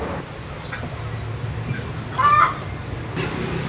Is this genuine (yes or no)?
yes